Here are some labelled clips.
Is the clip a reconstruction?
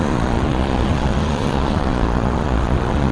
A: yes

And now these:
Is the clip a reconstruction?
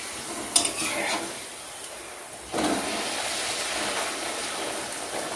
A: no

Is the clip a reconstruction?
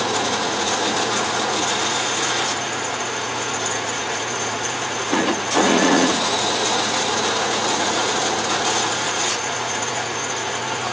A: yes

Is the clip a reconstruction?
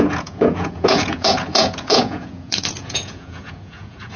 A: yes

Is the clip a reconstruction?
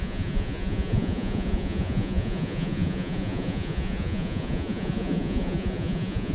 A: yes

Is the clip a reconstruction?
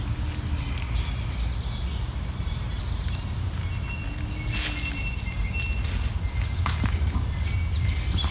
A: no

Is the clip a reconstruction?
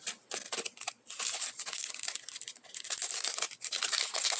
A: no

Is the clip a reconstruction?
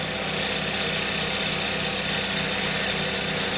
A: no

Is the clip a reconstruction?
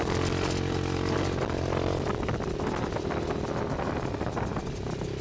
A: no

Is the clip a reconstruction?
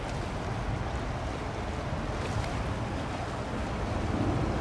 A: no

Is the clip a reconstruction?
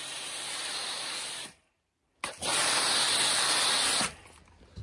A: no